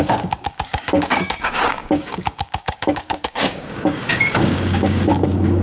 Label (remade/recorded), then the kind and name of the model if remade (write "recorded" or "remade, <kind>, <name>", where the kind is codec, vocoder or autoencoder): remade, codec, DAC